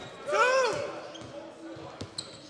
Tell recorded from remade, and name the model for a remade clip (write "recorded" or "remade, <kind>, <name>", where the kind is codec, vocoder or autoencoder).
recorded